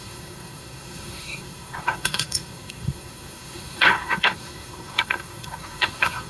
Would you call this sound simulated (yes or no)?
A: yes